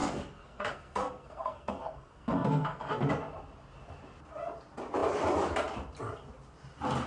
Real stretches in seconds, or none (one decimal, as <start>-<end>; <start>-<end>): 3.1-7.1